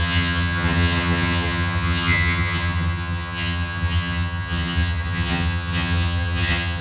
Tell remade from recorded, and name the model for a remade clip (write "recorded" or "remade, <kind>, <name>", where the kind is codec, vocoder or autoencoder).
remade, vocoder, HiFi-GAN